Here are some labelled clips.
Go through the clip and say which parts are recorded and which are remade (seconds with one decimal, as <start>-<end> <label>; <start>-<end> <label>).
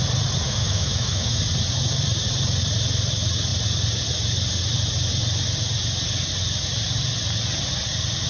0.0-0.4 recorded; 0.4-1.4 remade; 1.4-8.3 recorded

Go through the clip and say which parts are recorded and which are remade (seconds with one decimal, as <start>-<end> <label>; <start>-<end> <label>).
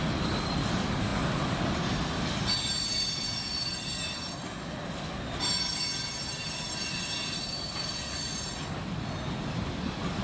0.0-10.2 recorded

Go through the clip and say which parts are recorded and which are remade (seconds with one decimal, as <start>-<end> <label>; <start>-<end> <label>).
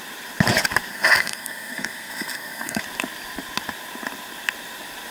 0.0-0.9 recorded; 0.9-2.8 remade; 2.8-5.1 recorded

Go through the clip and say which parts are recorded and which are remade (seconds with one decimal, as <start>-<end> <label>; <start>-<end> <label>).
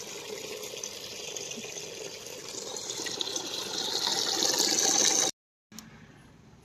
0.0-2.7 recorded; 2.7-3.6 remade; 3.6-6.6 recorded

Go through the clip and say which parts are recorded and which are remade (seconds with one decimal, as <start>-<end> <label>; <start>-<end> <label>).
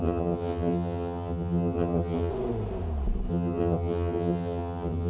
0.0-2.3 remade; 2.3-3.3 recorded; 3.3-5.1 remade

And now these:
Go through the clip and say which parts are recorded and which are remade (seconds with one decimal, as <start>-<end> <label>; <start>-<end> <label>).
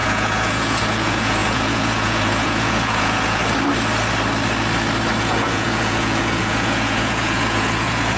0.0-3.4 remade; 3.4-5.2 recorded; 5.2-8.2 remade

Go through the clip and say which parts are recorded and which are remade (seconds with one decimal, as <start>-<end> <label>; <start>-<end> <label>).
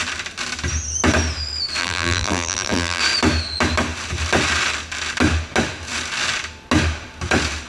0.0-1.8 recorded; 1.8-3.0 remade; 3.0-7.7 recorded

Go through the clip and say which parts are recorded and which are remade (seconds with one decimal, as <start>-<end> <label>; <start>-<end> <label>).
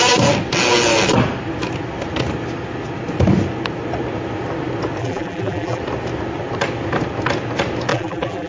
0.0-5.0 recorded; 5.0-5.8 remade; 5.8-7.9 recorded; 7.9-8.5 remade